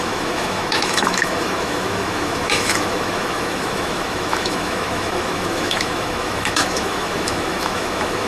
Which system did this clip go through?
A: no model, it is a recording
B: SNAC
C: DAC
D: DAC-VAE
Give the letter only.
D